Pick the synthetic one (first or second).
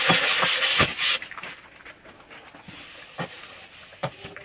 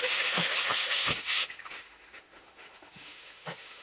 second